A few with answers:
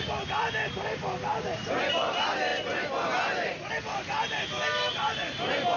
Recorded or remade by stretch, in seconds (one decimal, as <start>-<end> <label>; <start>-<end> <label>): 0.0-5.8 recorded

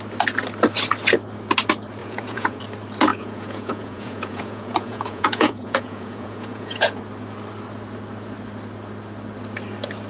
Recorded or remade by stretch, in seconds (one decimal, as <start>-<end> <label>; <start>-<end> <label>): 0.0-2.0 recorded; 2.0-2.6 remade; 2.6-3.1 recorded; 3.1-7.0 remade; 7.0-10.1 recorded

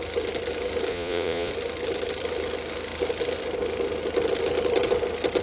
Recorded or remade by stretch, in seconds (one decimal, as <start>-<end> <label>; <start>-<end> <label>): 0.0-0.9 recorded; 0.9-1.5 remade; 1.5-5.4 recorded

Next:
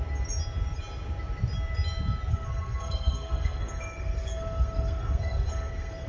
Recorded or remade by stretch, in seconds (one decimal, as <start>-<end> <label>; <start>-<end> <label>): 0.0-2.3 recorded; 2.3-6.1 remade

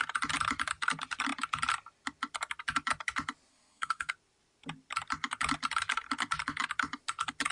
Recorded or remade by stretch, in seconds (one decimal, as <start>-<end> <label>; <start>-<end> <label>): 0.0-3.5 recorded; 3.5-4.1 remade; 4.1-7.5 recorded

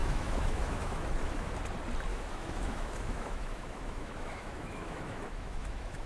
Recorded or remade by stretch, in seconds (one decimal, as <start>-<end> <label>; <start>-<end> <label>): 0.0-1.5 remade; 1.5-2.1 recorded; 2.1-6.1 remade

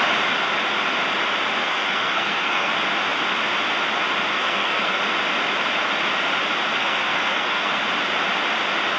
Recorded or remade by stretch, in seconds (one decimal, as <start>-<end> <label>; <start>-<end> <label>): 0.0-1.6 recorded; 1.6-2.7 remade; 2.7-4.3 recorded; 4.3-5.0 remade; 5.0-6.8 recorded; 6.8-7.8 remade; 7.8-9.0 recorded